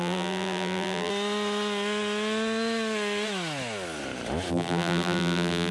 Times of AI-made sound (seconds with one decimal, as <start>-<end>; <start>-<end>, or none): 0.0-1.1; 4.5-5.7